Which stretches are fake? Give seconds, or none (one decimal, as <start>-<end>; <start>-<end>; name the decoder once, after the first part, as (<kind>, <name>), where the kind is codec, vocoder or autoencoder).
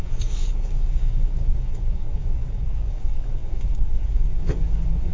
0.0-5.1 (codec, DAC)